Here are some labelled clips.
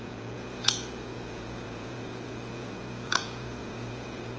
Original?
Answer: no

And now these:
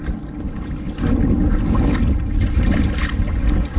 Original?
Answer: yes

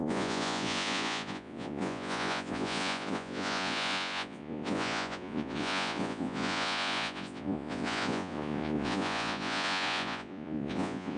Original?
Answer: no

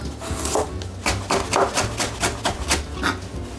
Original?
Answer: yes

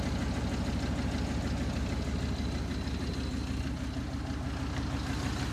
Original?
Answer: yes